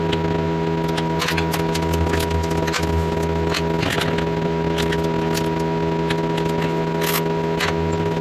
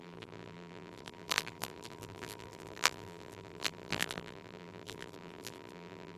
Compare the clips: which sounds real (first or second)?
first